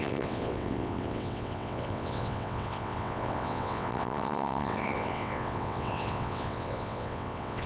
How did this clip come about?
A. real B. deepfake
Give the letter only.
B